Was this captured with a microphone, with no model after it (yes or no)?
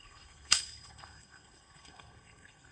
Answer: no